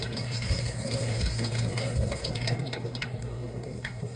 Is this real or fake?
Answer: fake